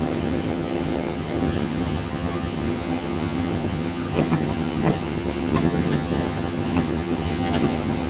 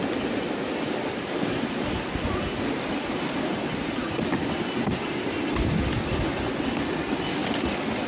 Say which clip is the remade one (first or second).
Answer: first